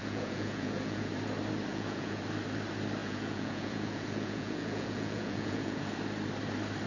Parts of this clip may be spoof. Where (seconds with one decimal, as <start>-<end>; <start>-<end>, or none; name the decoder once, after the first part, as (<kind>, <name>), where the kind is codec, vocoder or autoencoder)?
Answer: 0.0-1.1 (vocoder, Vocos); 1.7-2.2; 3.0-5.8